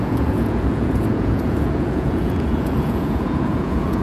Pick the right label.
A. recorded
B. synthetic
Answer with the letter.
B